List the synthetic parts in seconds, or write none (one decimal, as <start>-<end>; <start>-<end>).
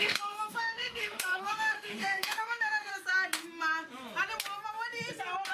0.0-2.9